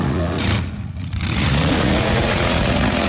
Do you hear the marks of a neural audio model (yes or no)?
yes